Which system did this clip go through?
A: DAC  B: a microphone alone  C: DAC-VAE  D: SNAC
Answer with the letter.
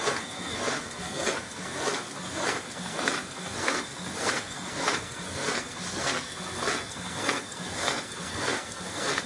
D